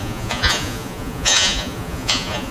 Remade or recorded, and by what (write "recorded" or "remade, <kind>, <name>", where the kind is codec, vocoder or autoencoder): remade, vocoder, Vocos